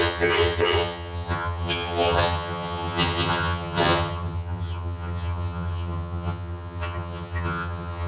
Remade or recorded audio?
remade